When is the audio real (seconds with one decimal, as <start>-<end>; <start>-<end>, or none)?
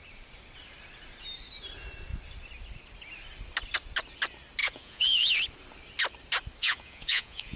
0.0-4.6; 5.3-6.6